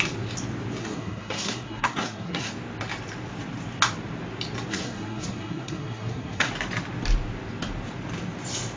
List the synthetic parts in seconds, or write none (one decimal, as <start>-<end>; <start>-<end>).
0.8-2.5; 4.7-6.5